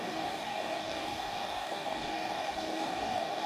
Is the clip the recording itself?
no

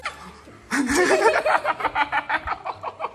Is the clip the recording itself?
yes